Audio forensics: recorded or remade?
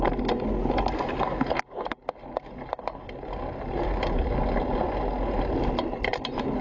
recorded